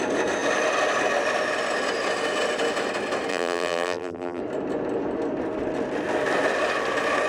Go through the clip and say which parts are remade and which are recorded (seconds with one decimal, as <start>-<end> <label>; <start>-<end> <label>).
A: 0.0-3.3 recorded; 3.3-4.4 remade; 4.4-7.3 recorded